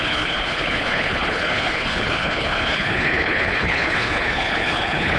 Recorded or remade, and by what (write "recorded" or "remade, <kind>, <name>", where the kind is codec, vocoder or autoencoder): remade, codec, HILCodec